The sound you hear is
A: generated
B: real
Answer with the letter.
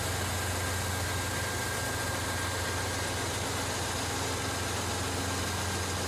B